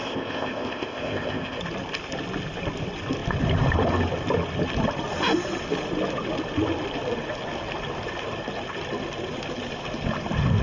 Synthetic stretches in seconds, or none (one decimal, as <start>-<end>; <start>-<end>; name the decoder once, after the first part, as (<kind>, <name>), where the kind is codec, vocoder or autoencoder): 0.0-1.6 (codec, ZipCodec)